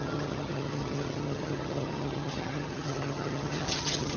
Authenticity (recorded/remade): remade